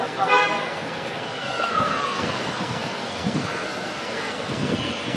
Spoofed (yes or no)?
yes